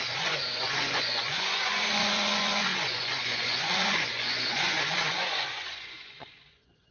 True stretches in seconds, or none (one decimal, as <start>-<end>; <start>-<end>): none